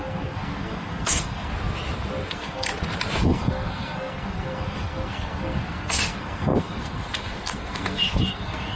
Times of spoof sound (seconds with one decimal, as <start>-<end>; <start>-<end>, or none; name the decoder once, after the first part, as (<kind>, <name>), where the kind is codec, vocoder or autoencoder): 0.0-1.5 (codec, SNAC); 2.3-2.7; 3.2-8.8